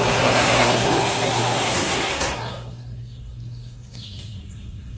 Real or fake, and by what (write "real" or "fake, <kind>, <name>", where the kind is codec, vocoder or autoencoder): fake, codec, SNAC